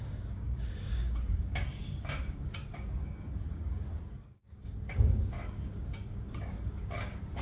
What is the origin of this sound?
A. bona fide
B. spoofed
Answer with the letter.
B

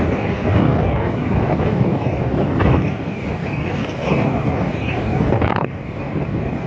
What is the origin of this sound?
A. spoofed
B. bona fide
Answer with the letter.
A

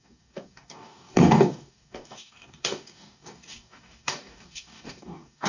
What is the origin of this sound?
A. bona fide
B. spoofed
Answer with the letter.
B